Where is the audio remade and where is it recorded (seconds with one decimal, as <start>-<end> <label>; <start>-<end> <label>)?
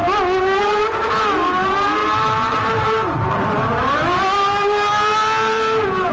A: 0.0-2.0 recorded; 2.0-6.1 remade